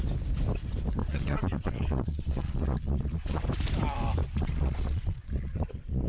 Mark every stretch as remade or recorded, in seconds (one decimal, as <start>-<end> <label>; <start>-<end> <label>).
0.0-1.0 recorded; 1.0-3.4 remade; 3.4-4.2 recorded; 4.2-6.1 remade